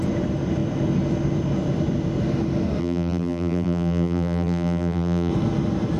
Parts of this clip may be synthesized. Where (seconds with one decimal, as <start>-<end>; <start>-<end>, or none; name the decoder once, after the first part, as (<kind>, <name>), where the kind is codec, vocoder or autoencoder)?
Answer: 2.8-5.3 (vocoder, BigVGAN v2)